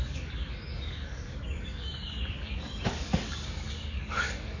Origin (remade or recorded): remade